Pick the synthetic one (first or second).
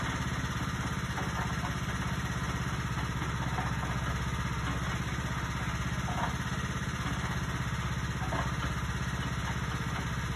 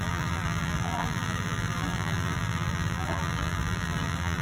second